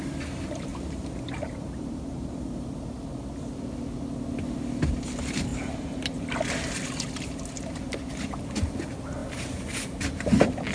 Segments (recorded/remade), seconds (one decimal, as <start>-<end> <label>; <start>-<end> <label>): 0.0-0.7 recorded; 0.7-2.4 remade; 2.4-5.5 recorded; 5.5-6.4 remade; 6.4-10.7 recorded